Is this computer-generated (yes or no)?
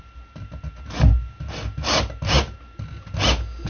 no